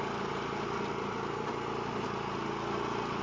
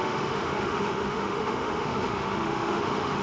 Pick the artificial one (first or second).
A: second